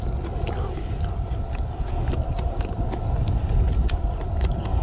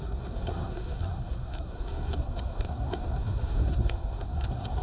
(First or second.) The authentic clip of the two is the first